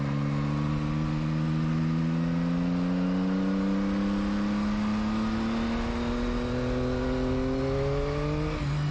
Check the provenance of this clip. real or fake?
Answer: real